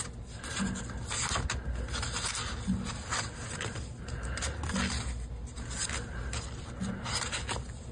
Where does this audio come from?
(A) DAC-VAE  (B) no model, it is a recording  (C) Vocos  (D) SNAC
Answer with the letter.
B